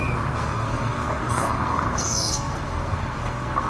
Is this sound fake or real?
fake